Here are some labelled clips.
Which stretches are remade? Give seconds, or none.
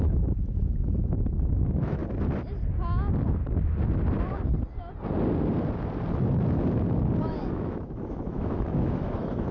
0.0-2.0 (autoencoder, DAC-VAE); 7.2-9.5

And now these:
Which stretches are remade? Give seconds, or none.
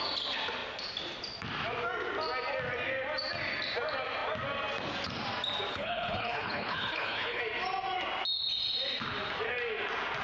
5.7-7.4 (codec, HILCodec)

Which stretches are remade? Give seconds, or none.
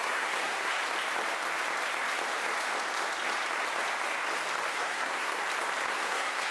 0.0-0.8 (codec, SNAC); 4.7-5.4; 5.9-6.5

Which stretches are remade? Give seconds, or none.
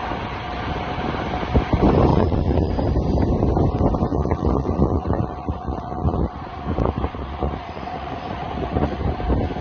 2.1-2.7 (vocoder, Vocos); 4.1-9.0